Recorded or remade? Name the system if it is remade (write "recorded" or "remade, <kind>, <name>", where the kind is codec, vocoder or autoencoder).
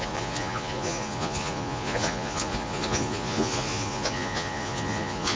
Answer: remade, vocoder, Vocos